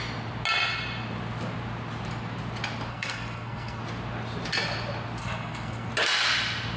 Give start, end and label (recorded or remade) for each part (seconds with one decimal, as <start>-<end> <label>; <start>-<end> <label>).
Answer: 0.0-2.9 recorded; 2.9-3.8 remade; 3.8-5.2 recorded; 5.2-5.9 remade; 5.9-6.8 recorded